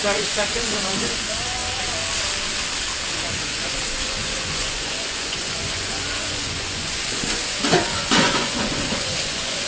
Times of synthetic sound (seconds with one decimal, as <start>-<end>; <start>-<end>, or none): 0.0-1.6; 3.1-9.7